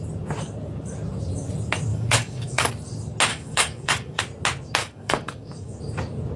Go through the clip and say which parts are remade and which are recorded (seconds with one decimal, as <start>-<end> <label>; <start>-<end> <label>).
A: 0.0-1.9 recorded; 1.9-2.7 remade; 2.7-3.3 recorded; 3.3-4.2 remade; 4.2-4.8 recorded; 4.8-5.8 remade; 5.8-6.4 recorded